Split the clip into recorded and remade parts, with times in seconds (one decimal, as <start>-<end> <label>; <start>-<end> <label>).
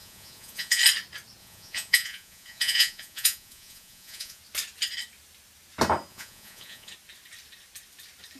0.0-0.8 remade; 0.8-1.4 recorded; 1.4-4.4 remade; 4.4-6.1 recorded; 6.1-6.9 remade; 6.9-8.4 recorded